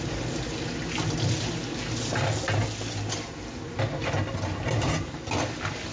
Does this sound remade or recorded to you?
recorded